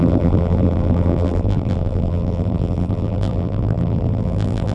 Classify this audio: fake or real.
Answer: fake